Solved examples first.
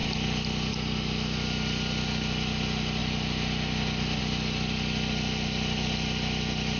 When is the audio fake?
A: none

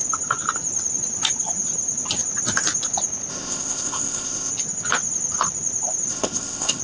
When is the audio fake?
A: 3.3-4.5 (codec, ZipCodec); 6.1-6.8

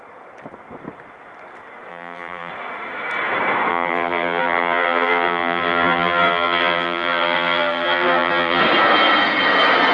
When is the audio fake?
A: 1.9-2.5 (vocoder, BigVGAN v2); 3.7-8.6

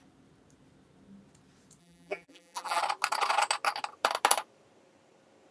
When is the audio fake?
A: 1.8-2.8 (vocoder, BigVGAN v2)

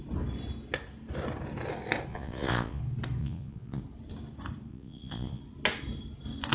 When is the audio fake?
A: 2.1-2.8 (vocoder, Vocos); 3.2-3.8; 4.7-5.4

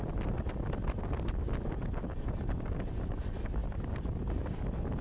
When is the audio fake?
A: none

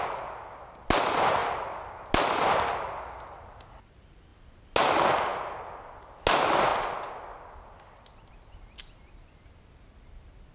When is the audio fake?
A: none